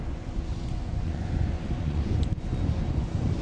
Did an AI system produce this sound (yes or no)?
yes